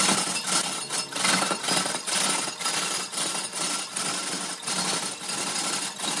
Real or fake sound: real